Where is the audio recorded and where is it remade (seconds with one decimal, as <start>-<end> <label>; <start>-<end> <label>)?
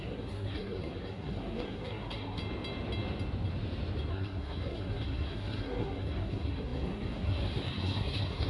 0.0-2.4 remade; 2.4-4.1 recorded; 4.1-8.5 remade